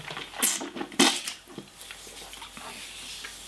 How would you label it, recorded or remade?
recorded